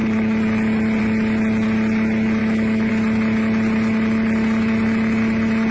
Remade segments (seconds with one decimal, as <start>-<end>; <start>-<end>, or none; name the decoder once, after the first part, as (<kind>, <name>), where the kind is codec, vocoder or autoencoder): 2.4-2.9 (autoencoder, DAC-VAE)